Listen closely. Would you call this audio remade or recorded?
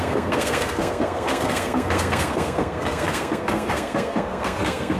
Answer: remade